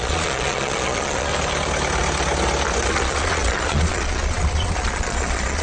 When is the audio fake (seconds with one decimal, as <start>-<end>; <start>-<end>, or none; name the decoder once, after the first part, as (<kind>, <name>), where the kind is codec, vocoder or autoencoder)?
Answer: 0.0-1.3 (vocoder, Vocos); 2.9-5.6